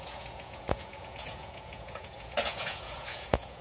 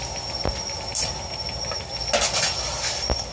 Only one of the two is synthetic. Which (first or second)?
first